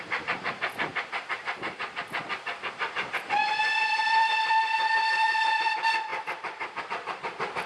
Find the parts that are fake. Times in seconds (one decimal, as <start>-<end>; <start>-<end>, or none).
0.0-7.7